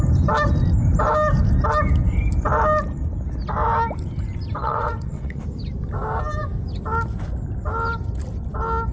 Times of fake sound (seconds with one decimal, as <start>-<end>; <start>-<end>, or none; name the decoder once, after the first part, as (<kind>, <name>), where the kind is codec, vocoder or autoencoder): 4.6-5.4 (vocoder, WaveNeXt)